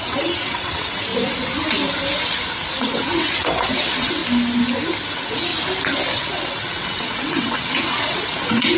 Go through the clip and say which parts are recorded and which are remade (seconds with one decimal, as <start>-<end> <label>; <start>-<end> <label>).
0.0-1.1 remade; 1.1-2.8 recorded; 2.8-4.2 remade; 4.2-5.1 recorded; 5.1-5.5 remade; 5.5-6.1 recorded; 6.1-8.8 remade